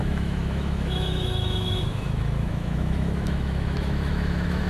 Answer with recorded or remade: remade